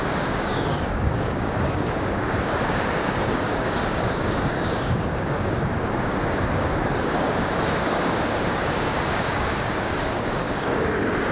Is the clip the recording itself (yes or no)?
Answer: no